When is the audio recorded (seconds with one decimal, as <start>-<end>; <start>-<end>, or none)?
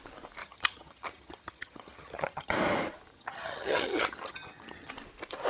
0.0-0.4; 2.5-3.1; 4.9-5.5